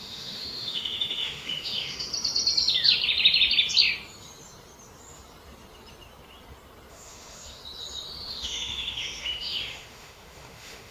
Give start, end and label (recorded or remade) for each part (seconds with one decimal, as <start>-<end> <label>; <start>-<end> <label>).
0.0-2.1 remade; 2.1-6.9 recorded; 6.9-7.6 remade; 7.6-8.3 recorded; 8.3-10.9 remade